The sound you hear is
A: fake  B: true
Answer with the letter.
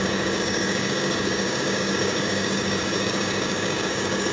A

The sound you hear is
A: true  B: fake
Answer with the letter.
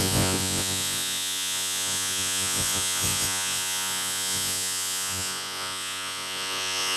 B